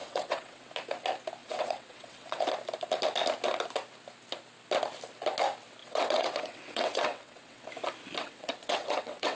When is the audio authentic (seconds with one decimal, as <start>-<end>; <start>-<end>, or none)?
0.7-1.4; 2.4-5.8; 7.7-8.2